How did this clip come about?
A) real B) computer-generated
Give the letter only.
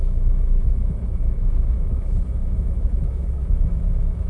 B